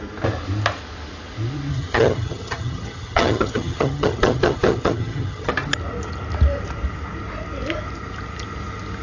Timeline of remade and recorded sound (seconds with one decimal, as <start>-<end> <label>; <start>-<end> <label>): 0.0-1.7 recorded; 1.7-5.5 remade; 5.5-9.0 recorded